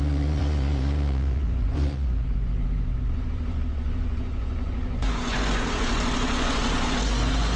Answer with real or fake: fake